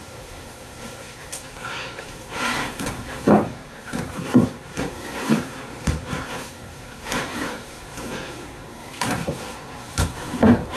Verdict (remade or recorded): remade